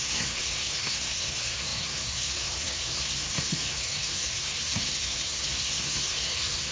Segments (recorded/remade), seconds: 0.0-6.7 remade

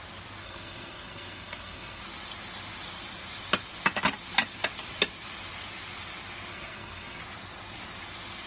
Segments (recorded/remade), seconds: 0.0-0.4 recorded; 0.4-2.0 remade; 2.0-6.5 recorded; 6.5-7.2 remade; 7.2-8.5 recorded